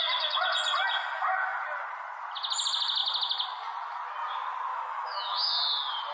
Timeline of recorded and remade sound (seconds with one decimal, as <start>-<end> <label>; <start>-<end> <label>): 0.0-4.7 recorded; 4.7-5.5 remade; 5.5-6.1 recorded